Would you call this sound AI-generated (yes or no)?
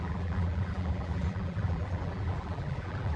yes